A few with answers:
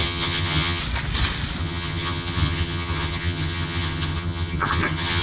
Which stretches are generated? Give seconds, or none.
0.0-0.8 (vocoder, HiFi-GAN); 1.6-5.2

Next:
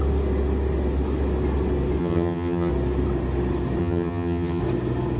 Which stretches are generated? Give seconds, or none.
2.0-2.7 (vocoder, HiFi-GAN); 3.8-4.6

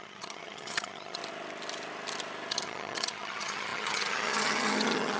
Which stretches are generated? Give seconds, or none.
0.0-1.2 (vocoder, HiFi-GAN); 2.5-5.2

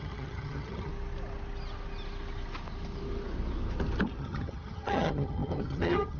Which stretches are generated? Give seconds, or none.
0.0-0.9 (vocoder, HiFi-GAN); 4.2-6.2

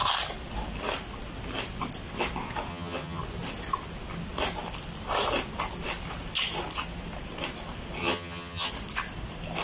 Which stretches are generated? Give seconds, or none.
2.7-3.2 (vocoder, HiFi-GAN); 8.0-8.7

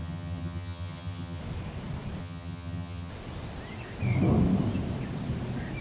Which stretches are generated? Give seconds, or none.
0.0-1.4 (vocoder, HiFi-GAN); 2.2-3.1

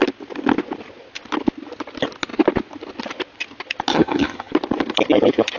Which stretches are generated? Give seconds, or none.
3.9-4.5 (vocoder, HiFi-GAN)